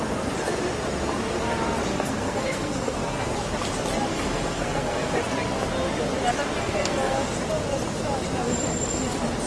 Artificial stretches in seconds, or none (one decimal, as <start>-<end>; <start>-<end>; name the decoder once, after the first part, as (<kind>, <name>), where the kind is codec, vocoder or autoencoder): 1.9-3.3 (codec, SNAC); 4.1-5.2; 6.6-7.3